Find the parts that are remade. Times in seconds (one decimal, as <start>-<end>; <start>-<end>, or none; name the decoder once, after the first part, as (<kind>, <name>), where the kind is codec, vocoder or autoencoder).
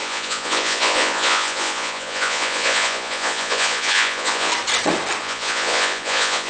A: 0.0-4.5 (vocoder, Vocos); 5.2-6.5